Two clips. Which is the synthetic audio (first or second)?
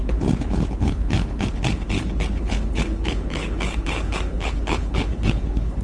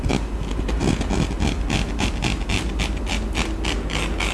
first